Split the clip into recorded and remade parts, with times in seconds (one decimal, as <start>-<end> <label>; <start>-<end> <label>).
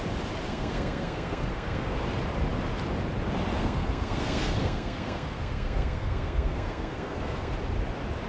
0.0-0.4 recorded; 0.4-2.0 remade; 2.0-3.5 recorded; 3.5-7.5 remade; 7.5-8.3 recorded